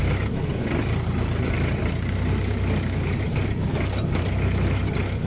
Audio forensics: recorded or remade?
recorded